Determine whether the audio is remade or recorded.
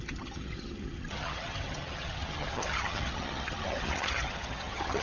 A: remade